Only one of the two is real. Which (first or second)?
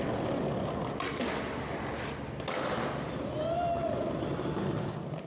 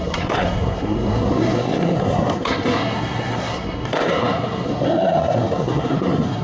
first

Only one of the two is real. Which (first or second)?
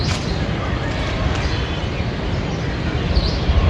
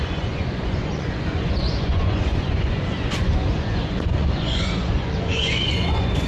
first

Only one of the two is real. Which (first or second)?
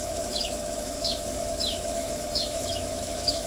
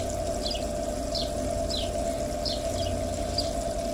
second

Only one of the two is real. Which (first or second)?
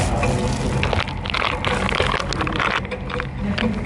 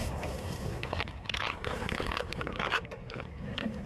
first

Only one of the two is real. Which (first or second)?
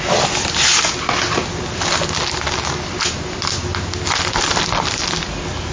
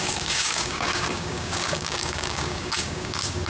first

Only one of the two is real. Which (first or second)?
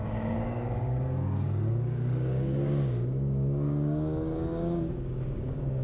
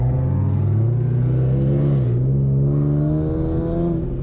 second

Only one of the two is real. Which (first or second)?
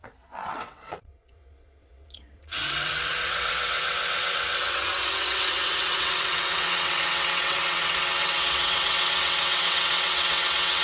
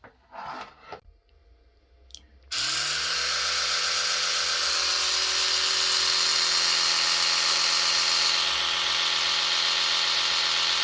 second